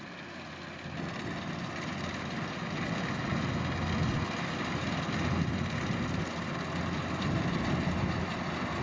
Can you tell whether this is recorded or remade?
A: recorded